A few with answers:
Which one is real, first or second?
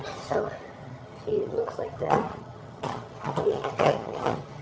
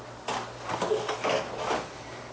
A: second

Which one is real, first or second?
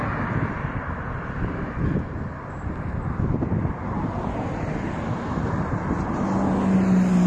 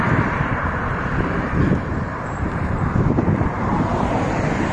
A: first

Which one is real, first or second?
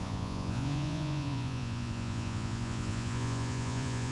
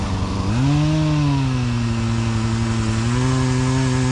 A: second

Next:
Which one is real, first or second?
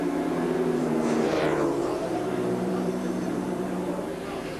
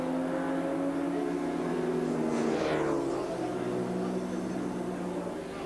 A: second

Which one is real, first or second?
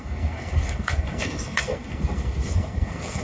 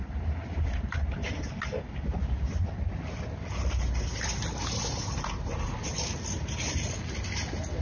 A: second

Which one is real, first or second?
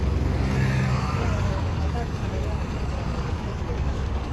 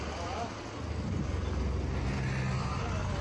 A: second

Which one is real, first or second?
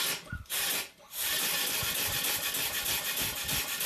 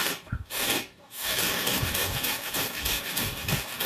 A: first